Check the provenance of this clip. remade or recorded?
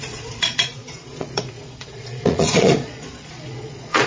remade